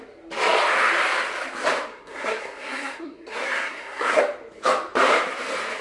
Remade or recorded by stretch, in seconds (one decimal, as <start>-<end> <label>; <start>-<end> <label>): 0.0-1.9 recorded; 1.9-4.2 remade; 4.2-5.8 recorded